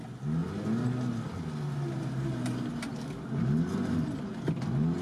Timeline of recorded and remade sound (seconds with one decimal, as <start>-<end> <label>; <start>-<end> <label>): 0.0-5.0 recorded